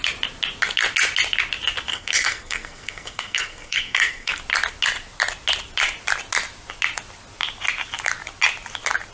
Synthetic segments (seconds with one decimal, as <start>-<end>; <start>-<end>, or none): 1.9-4.4